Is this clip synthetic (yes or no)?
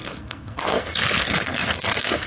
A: yes